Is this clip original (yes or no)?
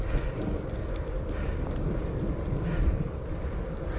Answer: yes